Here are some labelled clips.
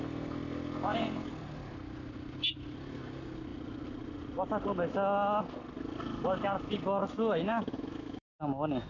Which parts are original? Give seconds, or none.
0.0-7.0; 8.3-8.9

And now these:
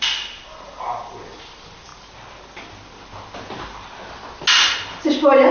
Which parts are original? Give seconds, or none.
1.9-5.5

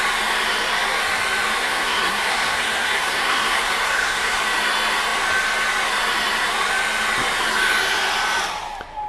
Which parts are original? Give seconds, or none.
0.0-1.6; 4.4-9.1

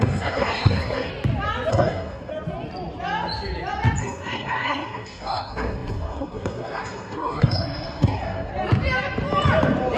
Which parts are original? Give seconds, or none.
1.1-1.7; 2.3-4.0; 8.5-10.0

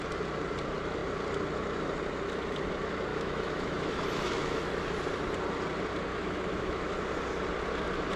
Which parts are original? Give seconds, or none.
0.0-3.1; 4.8-6.1; 7.0-8.2

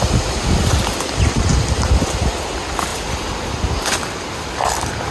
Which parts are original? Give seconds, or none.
0.0-1.5; 2.0-5.1

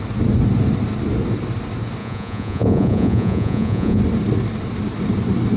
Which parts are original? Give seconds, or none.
0.0-2.0; 4.0-5.6

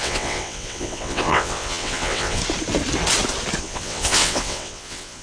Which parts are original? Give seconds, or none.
2.4-3.6